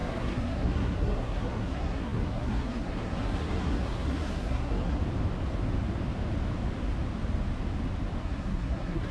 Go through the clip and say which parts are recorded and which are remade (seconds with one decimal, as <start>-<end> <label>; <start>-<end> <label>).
0.0-5.0 remade; 5.0-8.2 recorded; 8.2-9.1 remade